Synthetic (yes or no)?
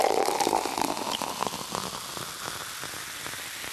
no